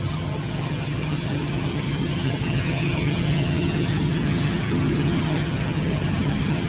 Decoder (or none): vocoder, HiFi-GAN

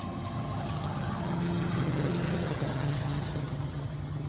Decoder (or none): vocoder, HiFi-GAN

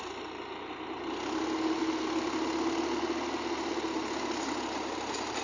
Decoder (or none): none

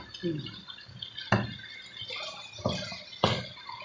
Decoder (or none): none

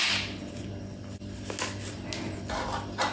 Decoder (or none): none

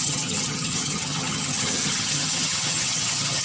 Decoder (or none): vocoder, HiFi-GAN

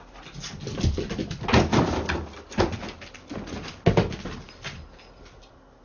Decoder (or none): none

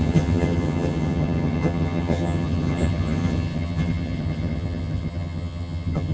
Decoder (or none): vocoder, HiFi-GAN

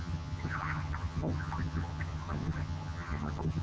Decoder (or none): vocoder, HiFi-GAN